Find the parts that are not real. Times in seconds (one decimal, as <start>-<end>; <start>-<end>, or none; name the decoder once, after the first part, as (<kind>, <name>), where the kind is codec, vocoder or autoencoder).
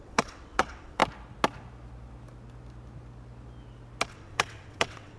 0.0-1.0 (vocoder, WaveNeXt); 4.1-5.2